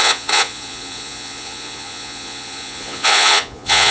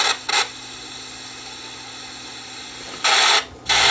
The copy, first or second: first